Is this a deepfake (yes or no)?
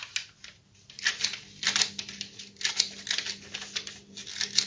no